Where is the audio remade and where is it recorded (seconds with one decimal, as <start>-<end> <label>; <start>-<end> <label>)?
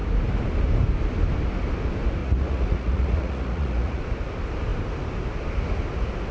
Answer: 0.0-2.2 recorded; 2.2-4.0 remade; 4.0-6.3 recorded